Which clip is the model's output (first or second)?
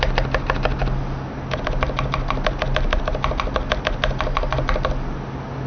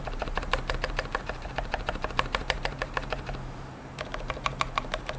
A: second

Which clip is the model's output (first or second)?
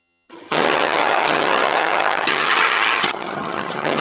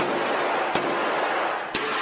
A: first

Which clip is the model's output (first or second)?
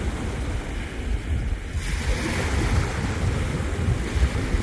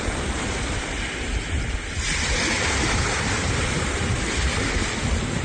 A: second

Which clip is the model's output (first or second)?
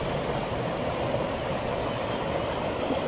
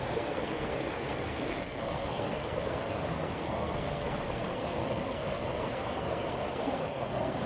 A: second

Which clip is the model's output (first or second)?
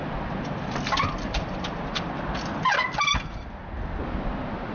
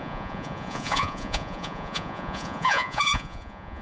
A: second